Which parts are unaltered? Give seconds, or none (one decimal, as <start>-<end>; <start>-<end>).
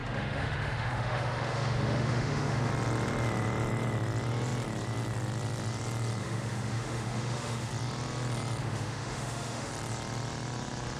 2.7-6.2; 7.7-8.6; 9.7-11.0